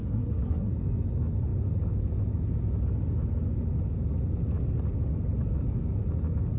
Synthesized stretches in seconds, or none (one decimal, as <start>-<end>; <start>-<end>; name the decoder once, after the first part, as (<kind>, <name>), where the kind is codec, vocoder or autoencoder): 0.0-0.7 (codec, SNAC)